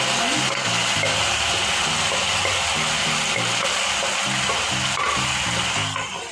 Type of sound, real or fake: real